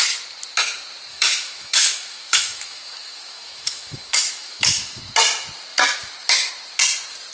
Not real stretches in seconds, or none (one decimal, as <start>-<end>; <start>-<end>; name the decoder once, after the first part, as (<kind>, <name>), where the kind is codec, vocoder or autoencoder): 1.1-5.0 (autoencoder, DAC-VAE)